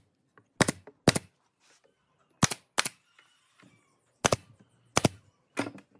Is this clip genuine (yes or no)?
yes